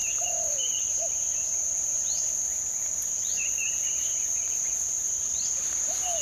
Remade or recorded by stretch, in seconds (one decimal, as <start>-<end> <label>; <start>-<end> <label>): 0.0-2.6 remade; 2.6-3.6 recorded; 3.6-5.6 remade; 5.6-6.2 recorded